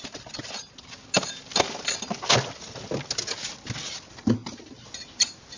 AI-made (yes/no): no